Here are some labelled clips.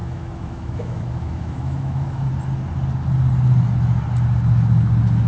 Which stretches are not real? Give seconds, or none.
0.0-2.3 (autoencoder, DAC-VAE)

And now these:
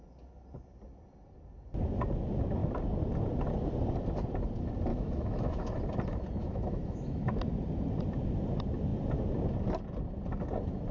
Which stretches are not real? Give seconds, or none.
4.9-5.8 (autoencoder, DAC-VAE); 6.4-7.3

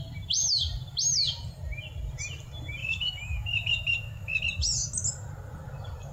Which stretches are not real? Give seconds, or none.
2.8-4.4 (autoencoder, DAC-VAE)